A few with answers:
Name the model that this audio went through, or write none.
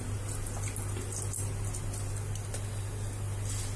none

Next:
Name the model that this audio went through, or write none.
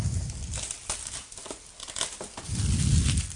none